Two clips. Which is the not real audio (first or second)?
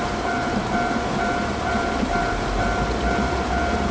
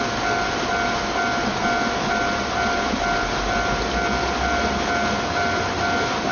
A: first